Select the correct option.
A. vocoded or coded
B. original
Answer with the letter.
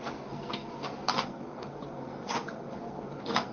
A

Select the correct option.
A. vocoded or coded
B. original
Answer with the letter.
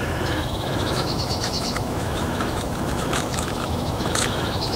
A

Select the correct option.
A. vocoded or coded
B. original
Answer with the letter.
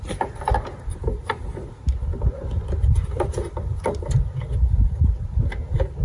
B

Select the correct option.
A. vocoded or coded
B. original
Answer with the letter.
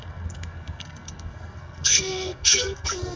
A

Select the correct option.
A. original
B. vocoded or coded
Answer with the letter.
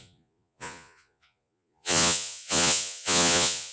B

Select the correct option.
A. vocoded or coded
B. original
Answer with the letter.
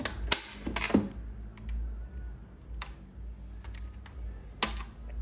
B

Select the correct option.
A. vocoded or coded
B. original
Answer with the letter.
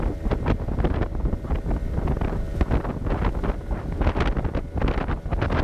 B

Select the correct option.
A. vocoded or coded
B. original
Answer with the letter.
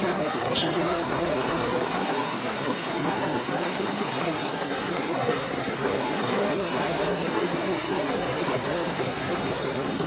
A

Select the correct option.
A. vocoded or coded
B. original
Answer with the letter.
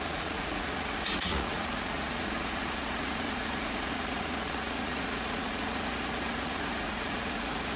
A